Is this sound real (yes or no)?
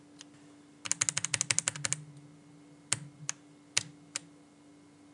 yes